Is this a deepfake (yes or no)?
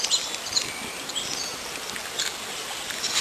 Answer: no